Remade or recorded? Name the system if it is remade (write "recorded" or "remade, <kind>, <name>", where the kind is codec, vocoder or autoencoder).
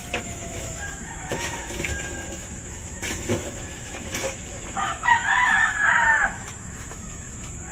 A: remade, autoencoder, DAC-VAE